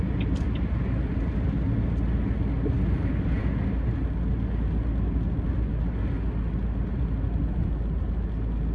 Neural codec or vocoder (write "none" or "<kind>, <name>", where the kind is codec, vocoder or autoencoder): none